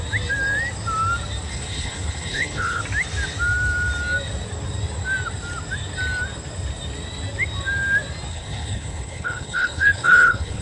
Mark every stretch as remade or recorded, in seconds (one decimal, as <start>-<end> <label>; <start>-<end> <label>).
0.0-1.5 recorded; 1.5-2.8 remade; 2.8-8.3 recorded; 8.3-10.6 remade